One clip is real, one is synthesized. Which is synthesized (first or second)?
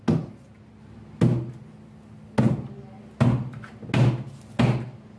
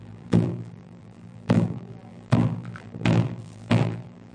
second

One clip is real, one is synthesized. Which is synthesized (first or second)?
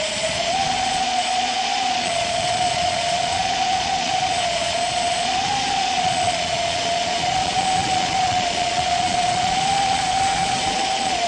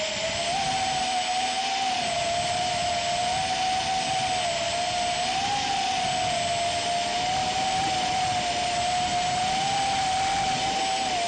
first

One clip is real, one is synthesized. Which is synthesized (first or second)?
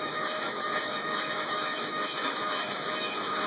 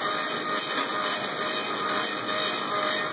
first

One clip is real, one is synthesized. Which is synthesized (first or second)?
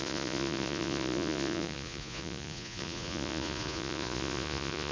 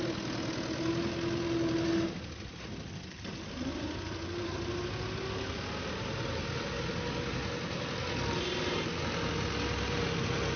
first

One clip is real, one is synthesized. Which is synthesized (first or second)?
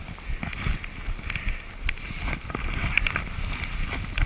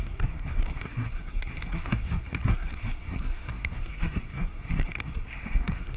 second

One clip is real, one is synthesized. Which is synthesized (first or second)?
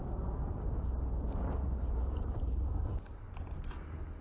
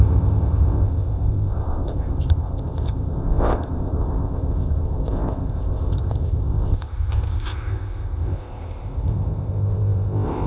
second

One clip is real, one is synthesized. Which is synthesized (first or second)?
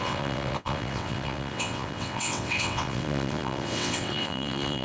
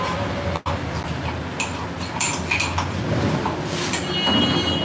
first